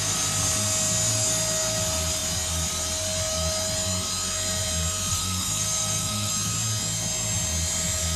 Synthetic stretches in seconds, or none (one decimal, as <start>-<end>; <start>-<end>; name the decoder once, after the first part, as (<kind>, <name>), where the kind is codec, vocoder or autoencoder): 5.1-6.3 (codec, SNAC)